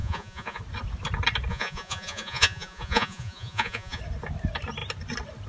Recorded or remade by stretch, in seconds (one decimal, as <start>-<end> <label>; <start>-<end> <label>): 0.0-0.6 remade; 0.6-1.5 recorded; 1.5-4.0 remade; 4.0-5.5 recorded